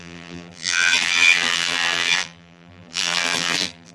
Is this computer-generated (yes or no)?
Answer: yes